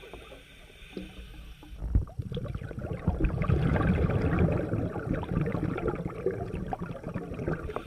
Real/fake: real